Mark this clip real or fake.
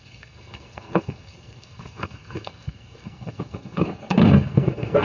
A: fake